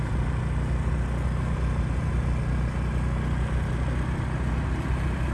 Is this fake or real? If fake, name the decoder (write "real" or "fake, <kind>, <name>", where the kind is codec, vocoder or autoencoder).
real